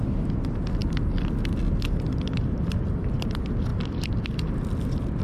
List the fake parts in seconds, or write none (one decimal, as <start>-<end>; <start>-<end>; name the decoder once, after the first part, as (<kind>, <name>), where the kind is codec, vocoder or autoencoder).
none